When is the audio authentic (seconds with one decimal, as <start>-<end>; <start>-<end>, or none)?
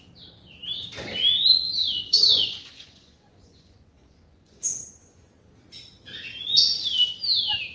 0.0-1.8; 5.3-7.7